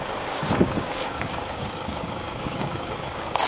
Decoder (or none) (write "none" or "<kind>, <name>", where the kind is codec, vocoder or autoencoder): codec, DAC